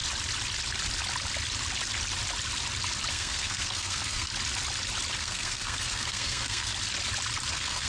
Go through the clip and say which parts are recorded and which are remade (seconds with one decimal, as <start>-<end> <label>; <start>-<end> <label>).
0.0-3.1 recorded; 3.1-4.3 remade; 4.3-5.2 recorded; 5.2-6.7 remade; 6.7-7.5 recorded; 7.5-7.9 remade